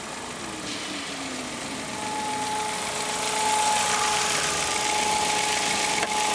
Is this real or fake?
real